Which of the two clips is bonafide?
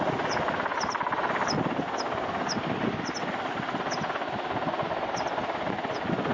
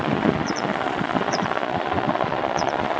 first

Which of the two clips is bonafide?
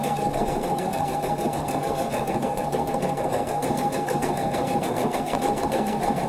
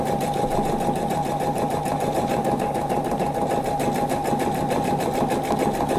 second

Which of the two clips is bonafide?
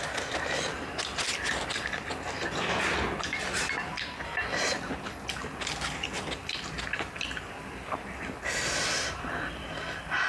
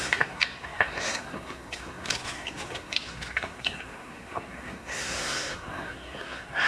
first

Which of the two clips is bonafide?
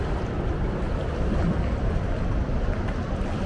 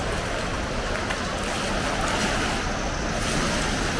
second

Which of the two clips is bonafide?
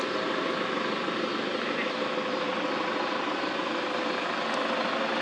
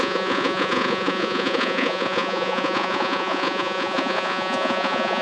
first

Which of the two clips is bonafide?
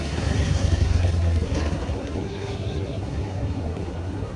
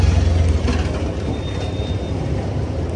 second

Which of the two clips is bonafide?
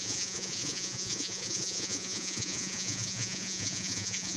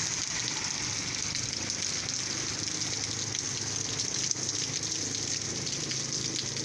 second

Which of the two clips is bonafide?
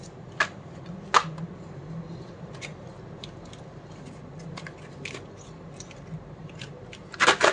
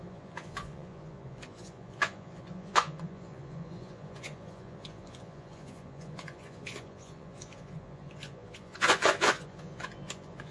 first